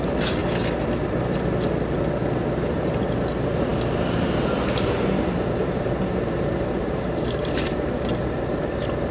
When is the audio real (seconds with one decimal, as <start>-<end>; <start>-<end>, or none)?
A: 0.4-2.7